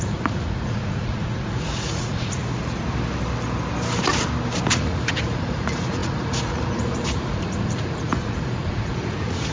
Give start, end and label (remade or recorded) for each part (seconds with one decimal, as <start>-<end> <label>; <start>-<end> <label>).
0.0-2.4 remade; 2.4-4.7 recorded; 4.7-9.5 remade